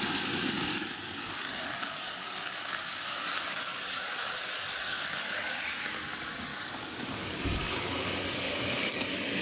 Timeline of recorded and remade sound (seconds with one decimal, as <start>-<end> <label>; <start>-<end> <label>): 0.0-0.7 recorded; 0.7-5.8 remade; 5.8-6.5 recorded; 6.5-9.4 remade